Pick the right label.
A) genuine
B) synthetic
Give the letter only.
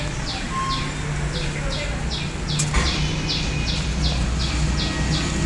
A